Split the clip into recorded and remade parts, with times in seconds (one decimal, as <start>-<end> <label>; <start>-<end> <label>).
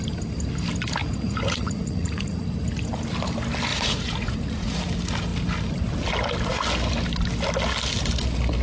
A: 0.0-1.0 recorded; 1.0-2.4 remade; 2.4-3.7 recorded; 3.7-4.8 remade; 4.8-8.6 recorded